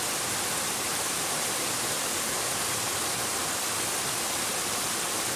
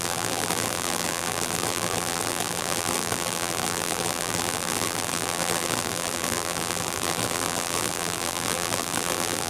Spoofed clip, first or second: second